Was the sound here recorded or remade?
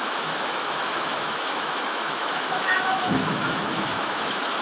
remade